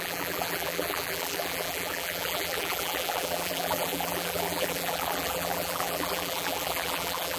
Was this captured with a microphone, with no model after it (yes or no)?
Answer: no